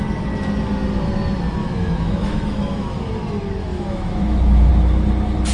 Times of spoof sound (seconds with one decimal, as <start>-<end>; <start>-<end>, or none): 1.6-3.1; 3.6-4.7